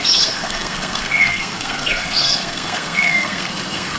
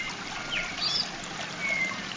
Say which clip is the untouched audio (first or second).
second